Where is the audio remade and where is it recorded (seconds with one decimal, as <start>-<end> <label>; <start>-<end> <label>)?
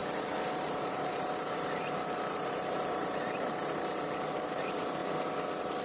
0.0-5.0 remade; 5.0-5.8 recorded